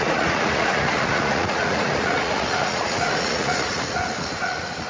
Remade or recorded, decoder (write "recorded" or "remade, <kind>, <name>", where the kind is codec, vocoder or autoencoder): remade, vocoder, Vocos